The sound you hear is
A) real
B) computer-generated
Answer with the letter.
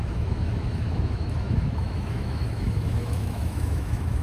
B